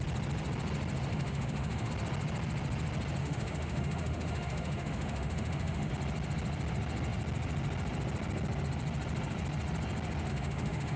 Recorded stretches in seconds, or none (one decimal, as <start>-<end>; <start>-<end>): 0.0-1.1; 1.9-3.2; 5.9-10.3